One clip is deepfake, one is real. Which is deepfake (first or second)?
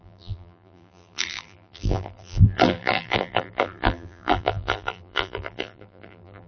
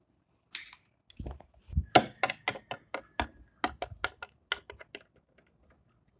first